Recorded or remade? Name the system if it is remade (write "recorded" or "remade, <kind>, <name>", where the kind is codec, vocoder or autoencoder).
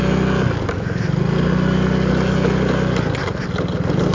recorded